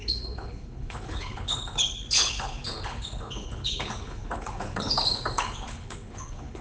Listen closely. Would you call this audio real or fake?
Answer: fake